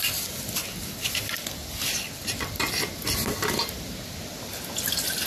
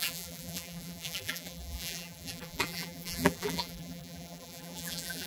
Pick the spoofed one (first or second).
second